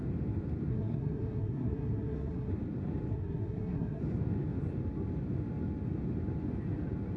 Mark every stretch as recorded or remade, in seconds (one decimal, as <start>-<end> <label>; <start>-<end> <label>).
0.0-0.7 recorded; 0.7-2.5 remade; 2.5-3.1 recorded; 3.1-4.0 remade; 4.0-7.2 recorded

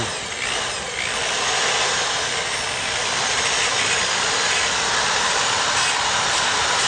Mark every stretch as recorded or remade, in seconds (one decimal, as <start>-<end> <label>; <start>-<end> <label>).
0.0-6.9 recorded

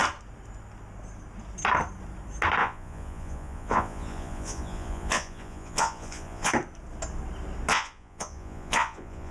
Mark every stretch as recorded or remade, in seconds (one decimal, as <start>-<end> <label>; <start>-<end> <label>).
0.0-2.6 recorded; 2.6-6.5 remade; 6.5-7.7 recorded; 7.7-9.3 remade